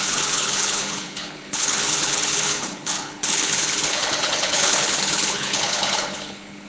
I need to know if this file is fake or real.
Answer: fake